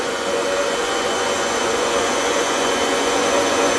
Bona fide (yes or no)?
no